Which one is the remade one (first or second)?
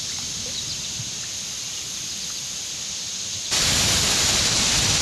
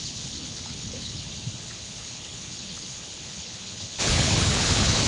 second